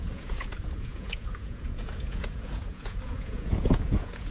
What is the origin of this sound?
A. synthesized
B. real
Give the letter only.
A